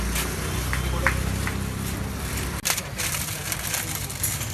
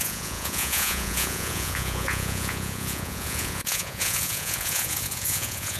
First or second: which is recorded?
first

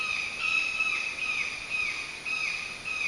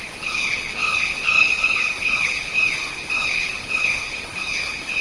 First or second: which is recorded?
first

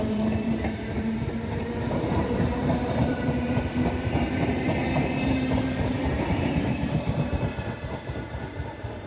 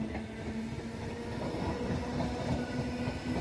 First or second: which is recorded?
second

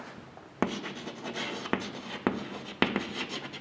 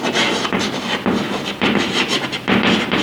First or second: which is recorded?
first